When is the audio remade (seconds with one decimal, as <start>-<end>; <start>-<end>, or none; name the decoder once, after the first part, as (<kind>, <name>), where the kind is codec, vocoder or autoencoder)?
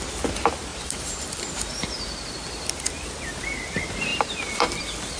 0.7-2.3 (vocoder, BigVGAN v2); 4.1-5.2